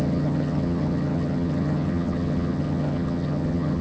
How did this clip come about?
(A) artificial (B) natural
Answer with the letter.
A